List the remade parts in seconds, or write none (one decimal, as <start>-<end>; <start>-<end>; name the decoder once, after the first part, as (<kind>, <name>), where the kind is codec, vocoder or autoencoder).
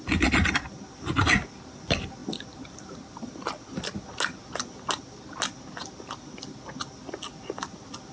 none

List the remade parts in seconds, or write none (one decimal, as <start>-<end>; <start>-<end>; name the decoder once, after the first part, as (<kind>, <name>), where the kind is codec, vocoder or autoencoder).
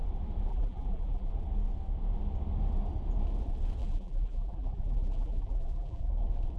0.5-1.3 (vocoder, BigVGAN v2); 3.8-6.1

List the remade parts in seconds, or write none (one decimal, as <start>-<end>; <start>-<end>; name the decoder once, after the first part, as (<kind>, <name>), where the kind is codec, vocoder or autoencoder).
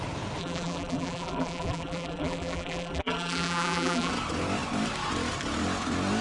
0.4-4.1 (vocoder, BigVGAN v2)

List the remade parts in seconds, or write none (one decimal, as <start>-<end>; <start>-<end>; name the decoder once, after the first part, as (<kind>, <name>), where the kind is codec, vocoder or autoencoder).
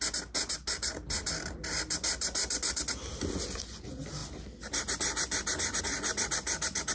4.2-5.8 (vocoder, BigVGAN v2)